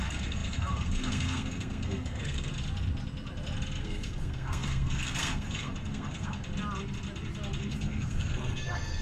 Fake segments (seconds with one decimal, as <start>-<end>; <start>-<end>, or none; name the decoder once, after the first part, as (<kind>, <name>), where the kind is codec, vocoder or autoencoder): 0.0-2.5 (codec, SNAC); 3.8-6.4; 7.6-9.0

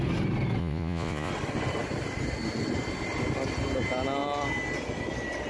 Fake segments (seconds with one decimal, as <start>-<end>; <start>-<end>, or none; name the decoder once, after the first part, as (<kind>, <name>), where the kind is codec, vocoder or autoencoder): 0.6-1.3 (vocoder, Vocos)

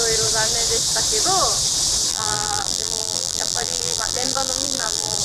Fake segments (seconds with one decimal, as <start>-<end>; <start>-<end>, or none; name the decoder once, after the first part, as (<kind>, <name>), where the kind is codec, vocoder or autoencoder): 2.1-5.2 (vocoder, BigVGAN v2)

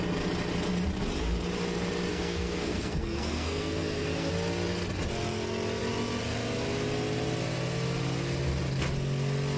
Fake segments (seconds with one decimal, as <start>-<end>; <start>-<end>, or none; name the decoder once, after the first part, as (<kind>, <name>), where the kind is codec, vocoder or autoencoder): 2.1-4.3 (codec, SNAC)

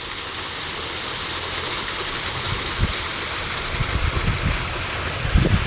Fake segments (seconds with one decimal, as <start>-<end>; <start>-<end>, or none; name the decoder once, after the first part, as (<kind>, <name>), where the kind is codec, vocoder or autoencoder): none

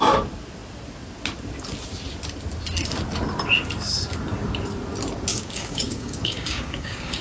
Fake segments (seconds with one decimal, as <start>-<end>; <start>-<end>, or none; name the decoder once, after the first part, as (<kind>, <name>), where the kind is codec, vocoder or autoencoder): 5.3-7.2 (codec, DAC)